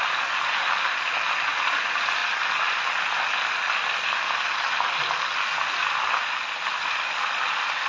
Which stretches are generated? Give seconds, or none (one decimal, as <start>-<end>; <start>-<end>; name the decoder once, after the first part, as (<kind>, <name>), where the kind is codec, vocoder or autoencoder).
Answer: none